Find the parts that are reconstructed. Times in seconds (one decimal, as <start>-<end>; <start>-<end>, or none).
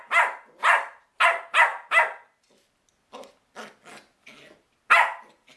none